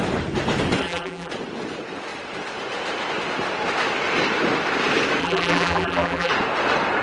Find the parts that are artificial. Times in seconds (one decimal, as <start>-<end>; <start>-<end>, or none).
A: 0.8-1.3; 5.2-6.3